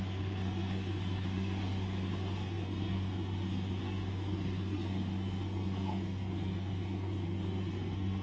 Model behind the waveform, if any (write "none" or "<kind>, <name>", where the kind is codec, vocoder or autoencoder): codec, SNAC